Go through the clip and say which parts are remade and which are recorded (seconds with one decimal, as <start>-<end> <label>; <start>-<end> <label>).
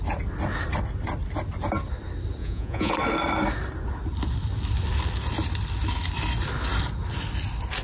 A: 0.0-2.4 recorded; 2.4-2.9 remade; 2.9-7.8 recorded